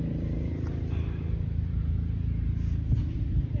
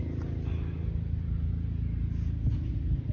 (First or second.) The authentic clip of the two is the second